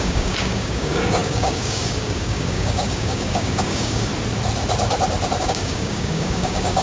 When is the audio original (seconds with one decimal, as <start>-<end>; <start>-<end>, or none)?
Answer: 4.1-5.4